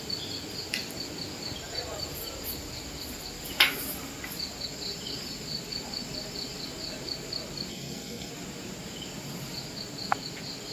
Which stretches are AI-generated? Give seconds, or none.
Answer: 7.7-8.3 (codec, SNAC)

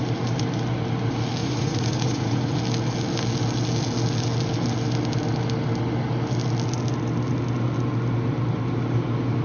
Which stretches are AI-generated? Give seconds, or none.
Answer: 1.4-2.5 (vocoder, Vocos)

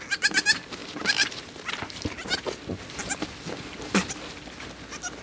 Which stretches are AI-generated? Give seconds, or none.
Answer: none

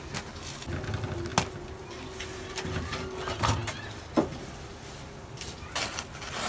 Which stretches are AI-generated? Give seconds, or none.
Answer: none

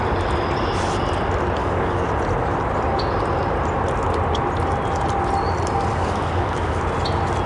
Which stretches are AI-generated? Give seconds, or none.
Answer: 1.6-2.1 (codec, DAC); 5.9-6.8

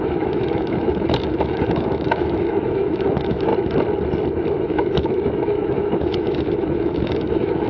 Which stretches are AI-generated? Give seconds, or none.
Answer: 0.0-3.5 (autoencoder, DAC-VAE); 4.6-7.7

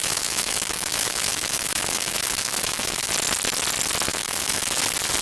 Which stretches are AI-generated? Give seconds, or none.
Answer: 0.0-3.1 (autoencoder, DAC-VAE); 4.1-4.8